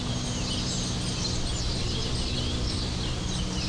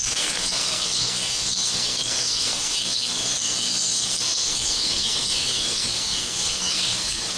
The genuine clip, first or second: first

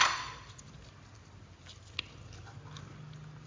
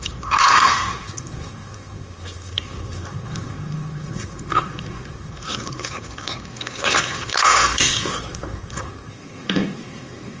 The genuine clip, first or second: first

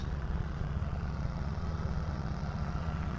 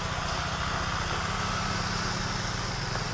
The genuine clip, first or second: second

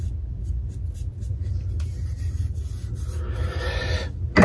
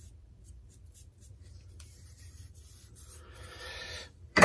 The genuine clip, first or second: first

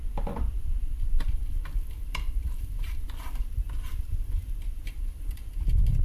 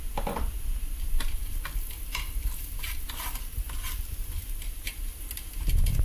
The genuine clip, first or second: second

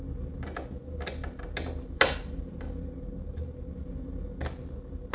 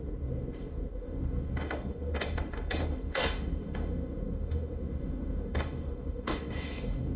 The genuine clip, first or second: first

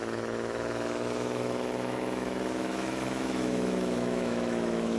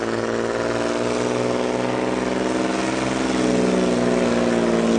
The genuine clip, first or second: second